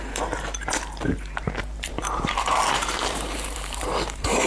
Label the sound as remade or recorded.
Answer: remade